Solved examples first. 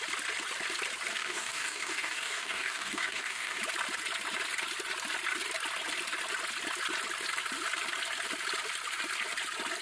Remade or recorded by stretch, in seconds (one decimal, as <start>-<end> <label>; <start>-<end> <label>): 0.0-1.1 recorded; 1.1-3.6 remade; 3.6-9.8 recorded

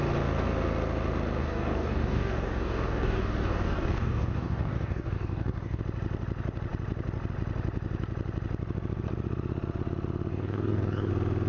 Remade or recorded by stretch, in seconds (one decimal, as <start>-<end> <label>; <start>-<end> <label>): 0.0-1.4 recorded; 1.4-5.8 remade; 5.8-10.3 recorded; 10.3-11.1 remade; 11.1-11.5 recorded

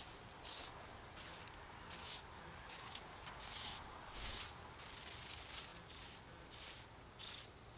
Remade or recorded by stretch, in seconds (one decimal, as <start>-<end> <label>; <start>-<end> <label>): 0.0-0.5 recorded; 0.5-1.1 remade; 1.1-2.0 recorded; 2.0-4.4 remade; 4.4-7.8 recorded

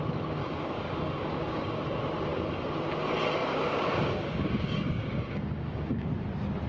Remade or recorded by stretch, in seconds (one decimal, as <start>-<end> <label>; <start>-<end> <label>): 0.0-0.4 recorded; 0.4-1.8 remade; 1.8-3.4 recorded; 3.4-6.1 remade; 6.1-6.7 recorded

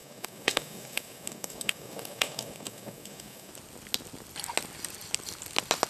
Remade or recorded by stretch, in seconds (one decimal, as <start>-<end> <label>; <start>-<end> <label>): 0.0-3.5 remade; 3.5-5.9 recorded

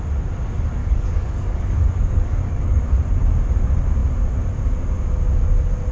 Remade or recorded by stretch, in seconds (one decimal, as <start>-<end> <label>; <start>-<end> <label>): 0.0-0.8 recorded; 0.8-2.9 remade; 2.9-5.9 recorded